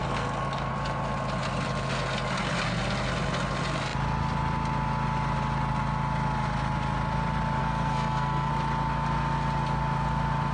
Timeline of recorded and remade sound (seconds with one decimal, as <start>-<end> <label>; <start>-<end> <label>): 0.0-0.7 remade; 0.7-7.6 recorded; 7.6-8.5 remade; 8.5-10.5 recorded